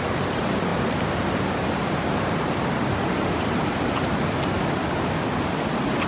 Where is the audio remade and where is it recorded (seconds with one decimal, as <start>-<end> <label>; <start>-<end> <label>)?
0.0-6.1 recorded